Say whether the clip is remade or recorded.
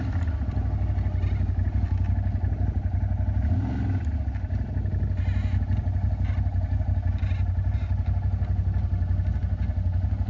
recorded